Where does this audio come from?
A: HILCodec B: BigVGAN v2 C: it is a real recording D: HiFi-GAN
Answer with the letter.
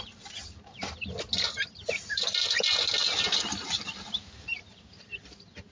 C